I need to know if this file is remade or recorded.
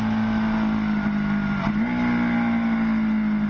recorded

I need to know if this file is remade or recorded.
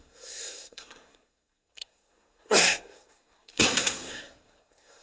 remade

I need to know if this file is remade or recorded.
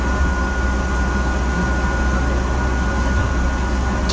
recorded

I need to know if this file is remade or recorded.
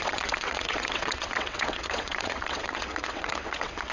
remade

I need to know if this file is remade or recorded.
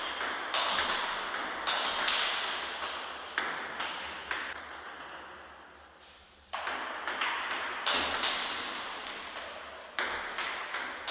recorded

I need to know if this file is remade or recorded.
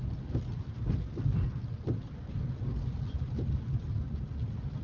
recorded